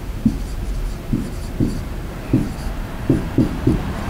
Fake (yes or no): yes